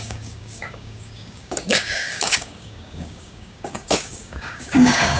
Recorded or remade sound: remade